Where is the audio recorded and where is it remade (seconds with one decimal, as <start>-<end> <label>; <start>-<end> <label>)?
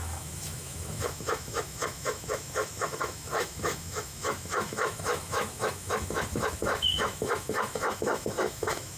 0.0-9.0 remade